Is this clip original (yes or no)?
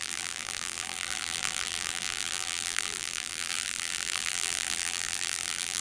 no